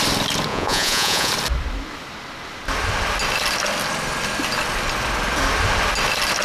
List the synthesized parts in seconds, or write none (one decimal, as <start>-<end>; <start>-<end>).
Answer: 0.5-1.3